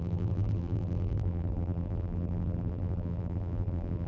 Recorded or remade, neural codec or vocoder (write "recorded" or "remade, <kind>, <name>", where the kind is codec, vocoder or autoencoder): remade, vocoder, BigVGAN v2